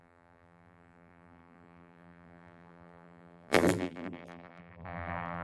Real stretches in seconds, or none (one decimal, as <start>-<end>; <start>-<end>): none